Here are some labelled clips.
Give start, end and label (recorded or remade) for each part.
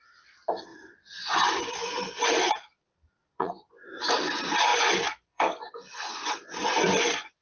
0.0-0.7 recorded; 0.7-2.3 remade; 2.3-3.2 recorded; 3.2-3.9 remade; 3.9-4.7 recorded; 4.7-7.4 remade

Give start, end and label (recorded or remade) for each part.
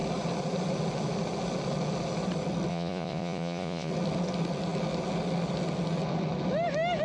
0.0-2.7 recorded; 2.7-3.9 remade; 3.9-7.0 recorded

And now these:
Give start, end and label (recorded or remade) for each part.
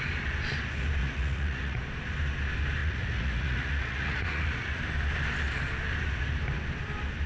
0.0-1.0 recorded; 1.0-1.8 remade; 1.8-2.8 recorded; 2.8-4.8 remade; 4.8-7.3 recorded